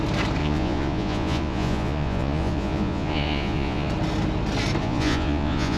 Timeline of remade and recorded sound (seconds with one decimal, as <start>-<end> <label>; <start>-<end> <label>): 0.0-0.4 recorded; 0.4-3.9 remade; 3.9-4.8 recorded; 4.8-5.8 remade